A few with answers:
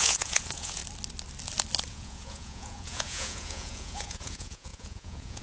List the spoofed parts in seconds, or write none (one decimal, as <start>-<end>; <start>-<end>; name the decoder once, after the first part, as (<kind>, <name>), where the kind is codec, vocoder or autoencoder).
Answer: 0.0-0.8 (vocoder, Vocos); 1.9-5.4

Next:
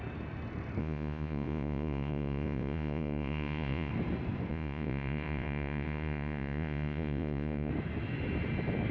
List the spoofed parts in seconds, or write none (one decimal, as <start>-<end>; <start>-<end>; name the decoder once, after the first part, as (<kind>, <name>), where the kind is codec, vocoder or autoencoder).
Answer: 0.8-3.9 (vocoder, Vocos); 4.5-7.7

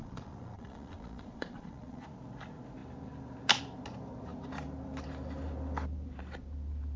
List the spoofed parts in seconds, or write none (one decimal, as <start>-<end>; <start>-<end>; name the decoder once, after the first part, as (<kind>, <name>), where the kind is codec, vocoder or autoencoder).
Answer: 0.0-2.0 (vocoder, Vocos)

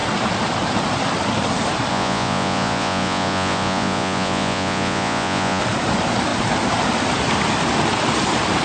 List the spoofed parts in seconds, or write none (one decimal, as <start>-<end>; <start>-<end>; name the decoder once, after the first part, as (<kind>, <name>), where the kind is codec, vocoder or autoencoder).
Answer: 1.9-5.6 (vocoder, Vocos)

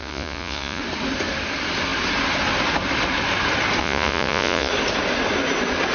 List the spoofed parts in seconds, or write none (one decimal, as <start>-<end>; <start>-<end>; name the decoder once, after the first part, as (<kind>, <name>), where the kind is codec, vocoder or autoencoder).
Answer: 0.0-0.8 (vocoder, Vocos); 3.8-4.7

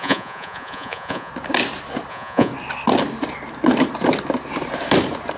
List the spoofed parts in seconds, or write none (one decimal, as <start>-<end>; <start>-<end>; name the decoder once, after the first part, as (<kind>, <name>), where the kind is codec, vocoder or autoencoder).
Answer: 0.0-1.3 (vocoder, Vocos); 2.1-2.5

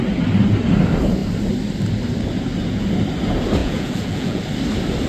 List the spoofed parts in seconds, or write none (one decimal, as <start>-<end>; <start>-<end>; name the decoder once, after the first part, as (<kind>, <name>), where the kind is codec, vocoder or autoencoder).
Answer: 3.6-4.4 (vocoder, Vocos)

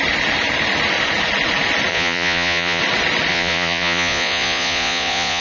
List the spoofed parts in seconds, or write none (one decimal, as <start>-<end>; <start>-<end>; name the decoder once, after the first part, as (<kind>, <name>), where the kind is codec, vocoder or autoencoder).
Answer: 1.9-2.8 (vocoder, Vocos); 3.3-5.4